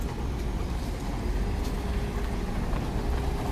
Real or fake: real